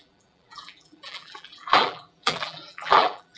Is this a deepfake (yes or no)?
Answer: yes